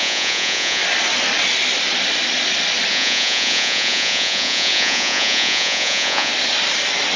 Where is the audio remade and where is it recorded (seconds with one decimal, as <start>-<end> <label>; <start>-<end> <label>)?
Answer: 0.0-0.8 remade; 0.8-2.9 recorded; 2.9-6.3 remade; 6.3-7.2 recorded